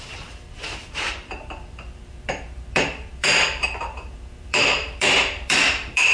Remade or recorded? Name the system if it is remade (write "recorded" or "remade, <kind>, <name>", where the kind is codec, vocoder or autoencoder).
remade, vocoder, BigVGAN v2